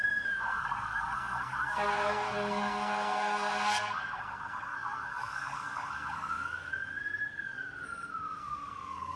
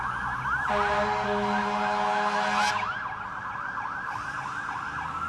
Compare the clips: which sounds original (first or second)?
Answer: second